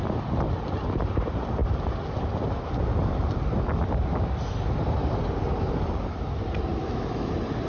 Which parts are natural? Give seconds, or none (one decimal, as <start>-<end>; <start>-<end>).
0.0-6.8; 7.3-7.7